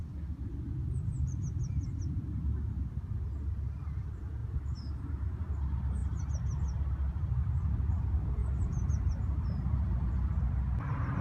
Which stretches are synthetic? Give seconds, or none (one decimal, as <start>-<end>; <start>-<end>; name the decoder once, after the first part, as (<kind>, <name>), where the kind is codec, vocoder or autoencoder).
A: 1.1-2.0 (vocoder, BigVGAN v2); 4.4-5.5; 8.4-9.9

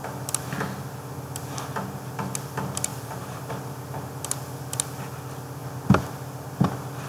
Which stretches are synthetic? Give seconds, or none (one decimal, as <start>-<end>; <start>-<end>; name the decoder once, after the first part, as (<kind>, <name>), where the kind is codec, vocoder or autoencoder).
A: 2.9-3.5 (vocoder, BigVGAN v2)